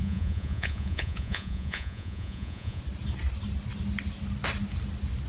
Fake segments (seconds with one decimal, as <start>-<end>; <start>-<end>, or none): 0.0-2.8